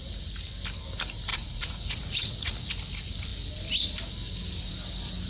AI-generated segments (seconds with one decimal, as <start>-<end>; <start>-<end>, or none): 1.3-2.5